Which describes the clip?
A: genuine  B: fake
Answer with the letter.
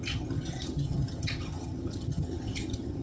B